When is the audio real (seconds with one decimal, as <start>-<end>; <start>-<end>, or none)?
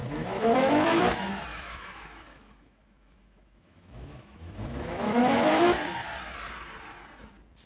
1.0-1.5; 5.6-7.7